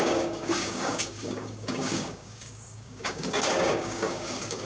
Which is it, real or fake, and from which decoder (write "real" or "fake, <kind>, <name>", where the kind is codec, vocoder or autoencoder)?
fake, codec, DAC